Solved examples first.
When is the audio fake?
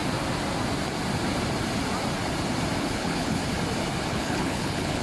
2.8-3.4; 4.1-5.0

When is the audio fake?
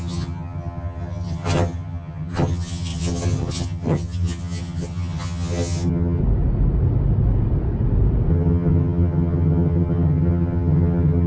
0.0-6.2; 8.3-11.3